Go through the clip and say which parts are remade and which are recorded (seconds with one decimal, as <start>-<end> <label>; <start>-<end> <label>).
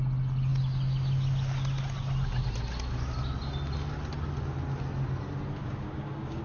0.0-5.6 recorded; 5.6-6.4 remade